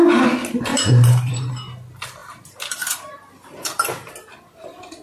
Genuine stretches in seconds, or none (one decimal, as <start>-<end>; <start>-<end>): 0.0-0.7; 1.5-2.2; 4.1-5.0

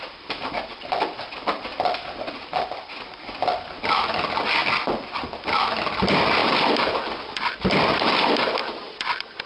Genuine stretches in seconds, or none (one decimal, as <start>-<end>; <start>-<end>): 1.7-3.8; 4.6-5.7; 8.6-9.5

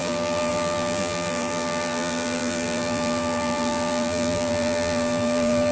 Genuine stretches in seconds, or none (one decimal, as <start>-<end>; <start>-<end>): none

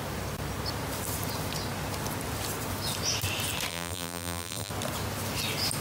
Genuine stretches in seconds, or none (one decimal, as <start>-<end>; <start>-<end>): 0.0-3.7; 4.7-5.8

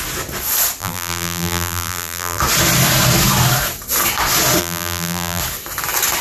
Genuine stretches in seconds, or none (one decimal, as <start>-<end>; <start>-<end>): 0.0-0.8; 2.4-4.6; 5.4-6.2

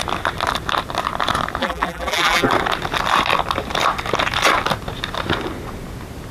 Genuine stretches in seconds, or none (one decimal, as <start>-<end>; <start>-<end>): 0.0-1.6; 2.5-6.3